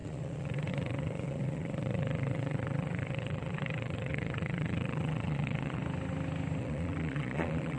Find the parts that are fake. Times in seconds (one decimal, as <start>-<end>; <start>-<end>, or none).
0.0-5.8; 6.6-7.8